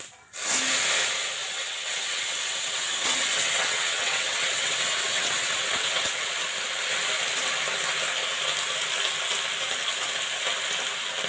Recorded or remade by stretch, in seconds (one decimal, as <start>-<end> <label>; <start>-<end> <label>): 0.0-1.4 recorded; 1.4-6.3 remade; 6.3-11.3 recorded